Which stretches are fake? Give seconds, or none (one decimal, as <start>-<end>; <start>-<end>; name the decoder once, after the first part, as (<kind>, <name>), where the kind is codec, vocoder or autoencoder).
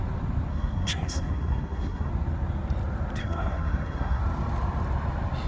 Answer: 0.5-2.1 (codec, SNAC); 3.2-4.2